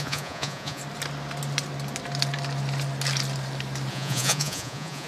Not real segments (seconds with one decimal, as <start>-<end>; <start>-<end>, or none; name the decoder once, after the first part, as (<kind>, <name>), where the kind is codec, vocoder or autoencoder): 0.0-0.8 (vocoder, Vocos); 3.9-5.1